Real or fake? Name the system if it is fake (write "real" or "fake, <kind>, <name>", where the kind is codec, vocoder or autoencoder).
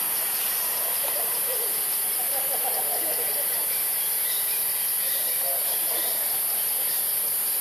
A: real